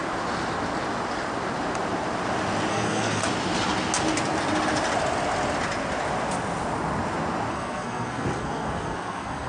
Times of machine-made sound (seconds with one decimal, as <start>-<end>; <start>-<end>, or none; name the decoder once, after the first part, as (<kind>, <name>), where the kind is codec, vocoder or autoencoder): 2.7-3.2 (codec, SNAC); 7.5-9.5